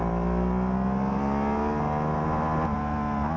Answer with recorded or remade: recorded